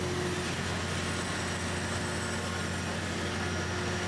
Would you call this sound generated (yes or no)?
no